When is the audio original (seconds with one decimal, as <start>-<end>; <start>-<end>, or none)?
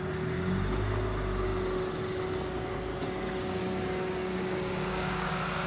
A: 0.0-3.6; 5.3-5.7